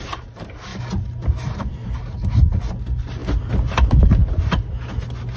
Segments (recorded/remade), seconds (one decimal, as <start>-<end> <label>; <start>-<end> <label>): 0.0-0.7 remade; 0.7-1.3 recorded; 1.3-3.2 remade; 3.2-3.7 recorded; 3.7-4.2 remade; 4.2-5.4 recorded